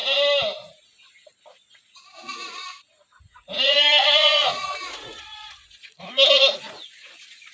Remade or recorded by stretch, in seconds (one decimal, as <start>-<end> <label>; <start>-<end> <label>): 0.0-1.7 recorded; 1.7-7.5 remade